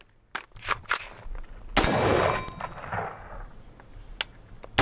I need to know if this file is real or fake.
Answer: real